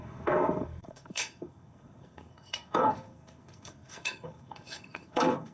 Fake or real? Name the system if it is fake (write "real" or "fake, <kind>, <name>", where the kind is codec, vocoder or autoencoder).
fake, codec, SNAC